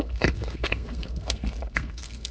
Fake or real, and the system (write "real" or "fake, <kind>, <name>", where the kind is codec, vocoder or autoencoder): fake, codec, SNAC